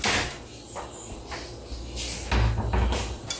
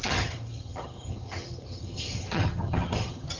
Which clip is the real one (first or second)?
first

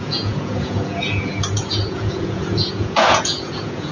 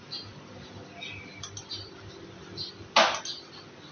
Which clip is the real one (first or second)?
second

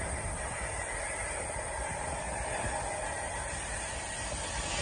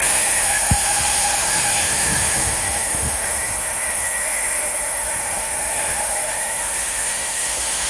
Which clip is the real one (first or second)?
first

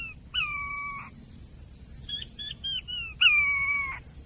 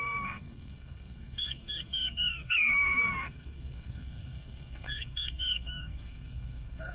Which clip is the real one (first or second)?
first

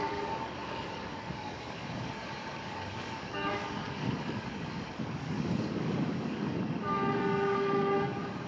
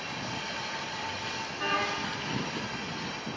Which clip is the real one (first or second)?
second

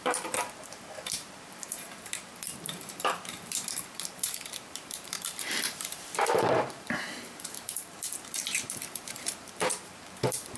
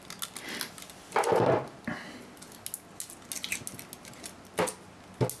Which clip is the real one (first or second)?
second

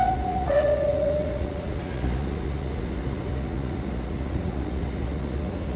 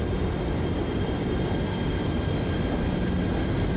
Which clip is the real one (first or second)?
second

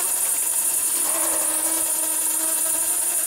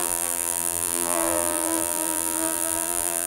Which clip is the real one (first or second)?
first